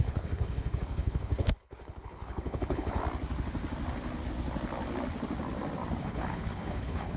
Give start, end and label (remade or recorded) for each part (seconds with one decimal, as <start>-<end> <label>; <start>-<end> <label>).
0.0-3.0 remade; 3.0-6.0 recorded; 6.0-7.2 remade